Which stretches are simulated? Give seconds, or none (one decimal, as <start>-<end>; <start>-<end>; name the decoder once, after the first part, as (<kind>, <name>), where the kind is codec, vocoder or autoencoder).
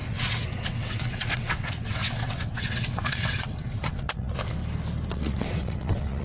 0.0-4.6 (vocoder, WaveNeXt); 5.1-6.2